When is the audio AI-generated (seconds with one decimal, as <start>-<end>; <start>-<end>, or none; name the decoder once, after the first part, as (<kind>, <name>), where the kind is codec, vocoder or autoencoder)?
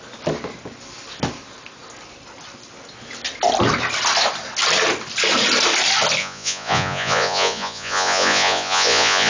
6.2-9.3 (vocoder, Vocos)